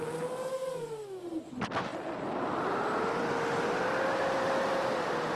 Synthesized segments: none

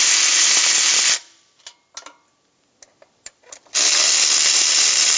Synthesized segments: none

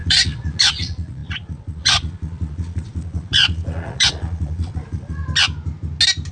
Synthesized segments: 0.0-5.2 (vocoder, Vocos)

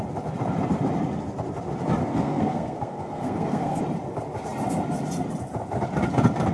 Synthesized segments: 2.0-3.8 (codec, SNAC)

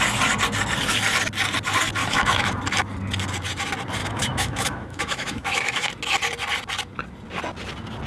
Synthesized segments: 2.0-2.6 (autoencoder, DAC-VAE); 4.0-5.9

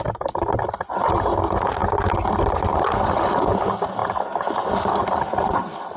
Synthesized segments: none